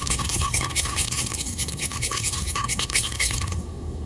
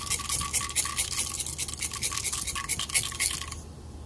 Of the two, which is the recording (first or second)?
second